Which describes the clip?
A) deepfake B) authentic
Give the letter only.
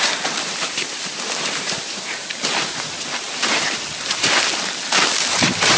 B